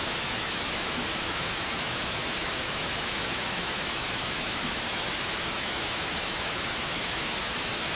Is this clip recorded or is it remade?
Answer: remade